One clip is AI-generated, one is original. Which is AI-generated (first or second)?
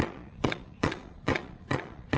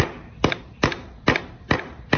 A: first